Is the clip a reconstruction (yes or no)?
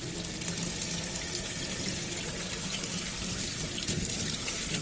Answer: no